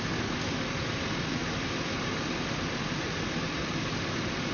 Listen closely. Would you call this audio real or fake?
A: real